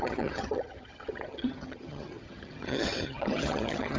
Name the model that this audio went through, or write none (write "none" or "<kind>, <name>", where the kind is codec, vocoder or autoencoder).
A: vocoder, HiFi-GAN